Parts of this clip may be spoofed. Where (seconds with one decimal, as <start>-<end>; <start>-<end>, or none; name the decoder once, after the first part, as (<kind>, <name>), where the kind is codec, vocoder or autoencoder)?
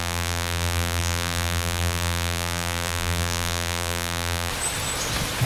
0.0-4.5 (vocoder, BigVGAN v2)